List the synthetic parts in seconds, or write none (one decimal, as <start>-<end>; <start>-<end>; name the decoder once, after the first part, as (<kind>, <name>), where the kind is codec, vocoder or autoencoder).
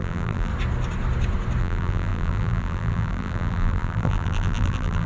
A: 0.0-0.5 (vocoder, BigVGAN v2); 1.6-5.1